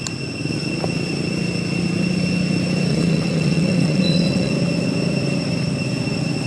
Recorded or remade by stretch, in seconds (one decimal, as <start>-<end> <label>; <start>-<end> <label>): 0.0-2.9 recorded; 2.9-4.5 remade; 4.5-6.5 recorded